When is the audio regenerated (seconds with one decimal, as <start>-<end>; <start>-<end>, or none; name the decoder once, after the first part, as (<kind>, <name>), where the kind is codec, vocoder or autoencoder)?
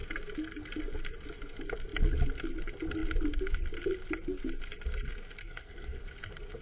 5.4-6.0 (codec, SNAC)